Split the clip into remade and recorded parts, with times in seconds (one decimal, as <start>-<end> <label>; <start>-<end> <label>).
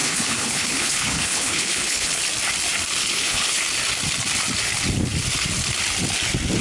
0.0-2.2 remade; 2.2-3.0 recorded; 3.0-3.6 remade; 3.6-6.6 recorded